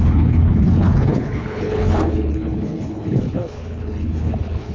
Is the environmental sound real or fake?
fake